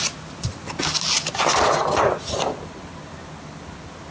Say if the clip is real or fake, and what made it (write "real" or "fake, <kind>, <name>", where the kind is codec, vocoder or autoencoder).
real